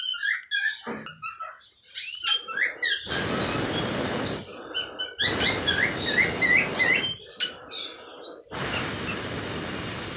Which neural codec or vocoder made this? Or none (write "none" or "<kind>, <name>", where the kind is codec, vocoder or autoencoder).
none